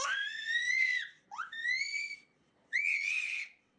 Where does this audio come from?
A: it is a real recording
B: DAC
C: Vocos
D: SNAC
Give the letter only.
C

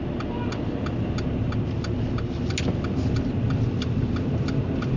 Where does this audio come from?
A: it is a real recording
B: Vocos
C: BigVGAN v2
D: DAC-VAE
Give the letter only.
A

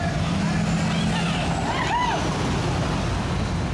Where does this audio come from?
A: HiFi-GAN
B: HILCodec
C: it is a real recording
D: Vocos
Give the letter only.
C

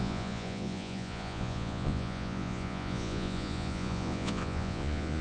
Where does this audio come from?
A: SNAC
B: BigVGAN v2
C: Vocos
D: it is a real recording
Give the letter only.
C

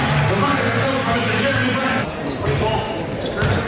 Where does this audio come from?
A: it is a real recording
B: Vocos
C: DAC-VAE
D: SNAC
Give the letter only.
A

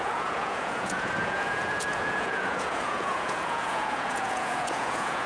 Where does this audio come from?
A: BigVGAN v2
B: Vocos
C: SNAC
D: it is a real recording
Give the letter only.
B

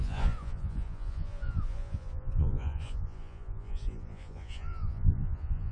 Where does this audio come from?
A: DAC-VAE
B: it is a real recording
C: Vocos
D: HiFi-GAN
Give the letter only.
C